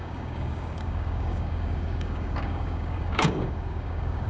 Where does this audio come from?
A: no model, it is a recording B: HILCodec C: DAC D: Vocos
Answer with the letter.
C